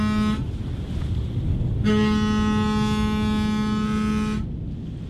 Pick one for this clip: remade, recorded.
recorded